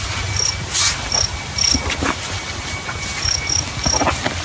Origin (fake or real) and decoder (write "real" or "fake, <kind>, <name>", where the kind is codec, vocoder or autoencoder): real